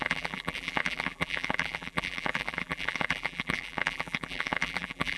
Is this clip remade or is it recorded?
remade